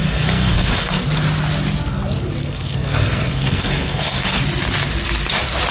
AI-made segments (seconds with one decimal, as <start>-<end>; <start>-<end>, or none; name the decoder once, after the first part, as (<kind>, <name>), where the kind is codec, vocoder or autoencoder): 0.0-1.0 (codec, SNAC); 2.4-4.4